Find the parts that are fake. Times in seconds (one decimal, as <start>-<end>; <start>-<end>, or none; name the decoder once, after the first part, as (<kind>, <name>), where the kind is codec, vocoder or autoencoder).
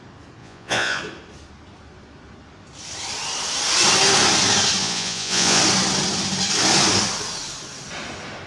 0.4-1.0 (vocoder, Vocos); 4.8-5.6